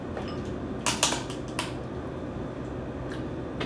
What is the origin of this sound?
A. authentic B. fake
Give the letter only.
A